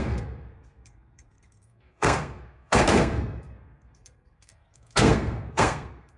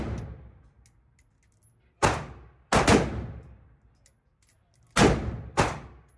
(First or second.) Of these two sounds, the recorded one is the second